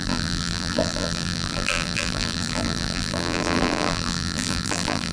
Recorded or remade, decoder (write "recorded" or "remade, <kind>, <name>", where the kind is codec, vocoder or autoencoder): remade, vocoder, BigVGAN v2